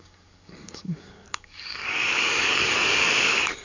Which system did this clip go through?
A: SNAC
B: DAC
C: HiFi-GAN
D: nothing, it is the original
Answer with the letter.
B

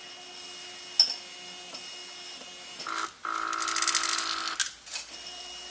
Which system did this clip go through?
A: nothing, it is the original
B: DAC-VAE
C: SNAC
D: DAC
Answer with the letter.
A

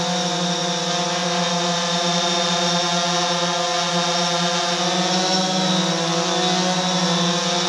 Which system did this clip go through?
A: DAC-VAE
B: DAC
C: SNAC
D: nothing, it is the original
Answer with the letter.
D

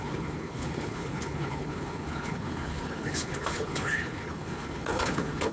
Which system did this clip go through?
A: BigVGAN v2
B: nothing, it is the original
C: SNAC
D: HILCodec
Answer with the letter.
D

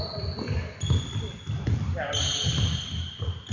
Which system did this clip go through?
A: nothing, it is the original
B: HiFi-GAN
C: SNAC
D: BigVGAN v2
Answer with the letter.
A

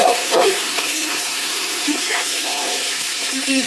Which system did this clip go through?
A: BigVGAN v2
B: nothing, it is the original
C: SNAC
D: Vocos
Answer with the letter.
C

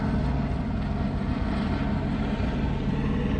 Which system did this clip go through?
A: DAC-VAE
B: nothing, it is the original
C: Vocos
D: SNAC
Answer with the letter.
B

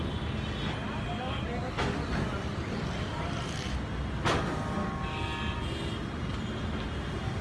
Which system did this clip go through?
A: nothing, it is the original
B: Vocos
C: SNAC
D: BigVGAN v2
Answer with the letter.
A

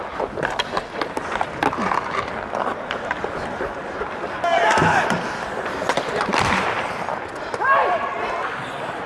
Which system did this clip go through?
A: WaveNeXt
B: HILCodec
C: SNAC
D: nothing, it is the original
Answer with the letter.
D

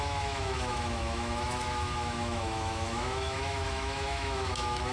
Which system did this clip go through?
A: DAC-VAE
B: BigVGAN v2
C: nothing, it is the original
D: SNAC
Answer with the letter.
A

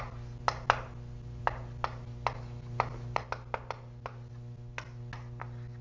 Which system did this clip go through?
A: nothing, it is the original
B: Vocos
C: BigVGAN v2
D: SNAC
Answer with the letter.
A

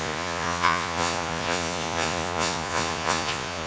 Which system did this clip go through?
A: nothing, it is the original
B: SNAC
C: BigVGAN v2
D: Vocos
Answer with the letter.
D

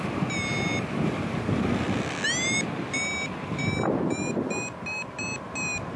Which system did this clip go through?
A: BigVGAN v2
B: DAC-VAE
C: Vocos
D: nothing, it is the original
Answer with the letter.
D